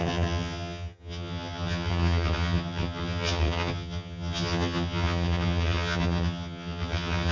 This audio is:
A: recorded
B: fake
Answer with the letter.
B